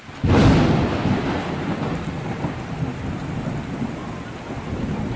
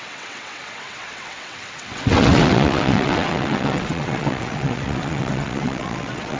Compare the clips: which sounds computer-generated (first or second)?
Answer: second